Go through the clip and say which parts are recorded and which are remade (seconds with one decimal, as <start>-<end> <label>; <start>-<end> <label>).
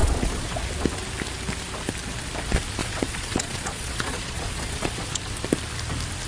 0.0-0.7 remade; 0.7-2.8 recorded; 2.8-5.2 remade; 5.2-6.3 recorded